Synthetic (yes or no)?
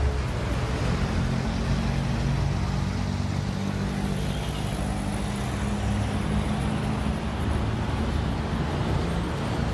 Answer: no